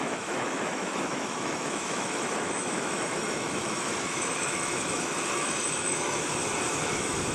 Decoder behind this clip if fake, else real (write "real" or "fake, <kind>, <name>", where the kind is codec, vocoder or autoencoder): fake, autoencoder, DAC-VAE